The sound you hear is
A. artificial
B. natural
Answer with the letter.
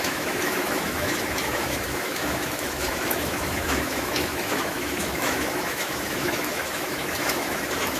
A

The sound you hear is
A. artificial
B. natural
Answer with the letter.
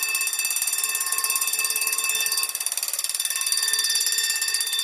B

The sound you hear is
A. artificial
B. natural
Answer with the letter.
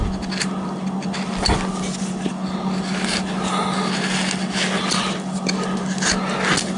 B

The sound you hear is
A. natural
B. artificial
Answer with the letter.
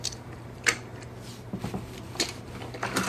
B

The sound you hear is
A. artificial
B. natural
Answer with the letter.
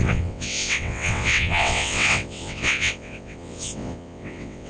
A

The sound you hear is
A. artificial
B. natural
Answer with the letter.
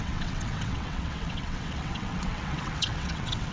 A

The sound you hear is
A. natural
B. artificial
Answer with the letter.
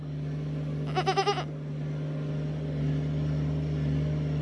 A